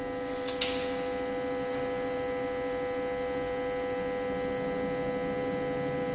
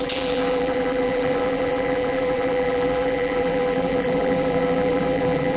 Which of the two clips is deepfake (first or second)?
second